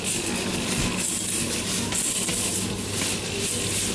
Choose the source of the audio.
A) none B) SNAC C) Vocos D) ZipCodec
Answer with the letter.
A